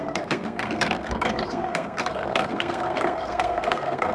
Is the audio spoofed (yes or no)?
yes